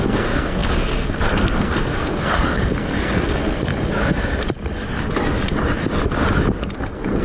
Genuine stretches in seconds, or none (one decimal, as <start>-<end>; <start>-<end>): 3.7-6.8